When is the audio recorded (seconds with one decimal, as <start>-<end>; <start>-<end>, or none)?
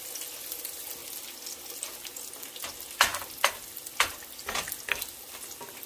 0.0-5.9